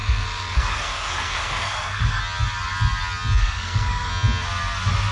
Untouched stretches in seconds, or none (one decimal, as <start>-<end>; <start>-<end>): 2.2-3.4; 4.1-5.1